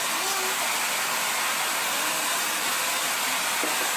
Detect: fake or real real